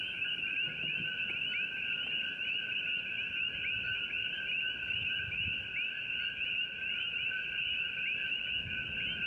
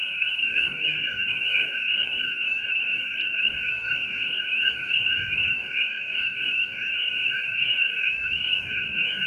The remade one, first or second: second